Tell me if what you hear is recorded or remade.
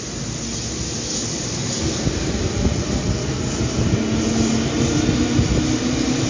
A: recorded